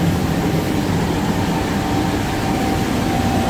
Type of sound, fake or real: real